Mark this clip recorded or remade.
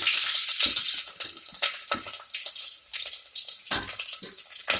recorded